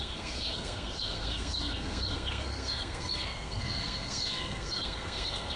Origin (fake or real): fake